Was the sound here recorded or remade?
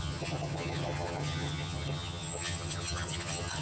remade